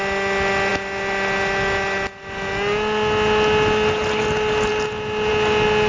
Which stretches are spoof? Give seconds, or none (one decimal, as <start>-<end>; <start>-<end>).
none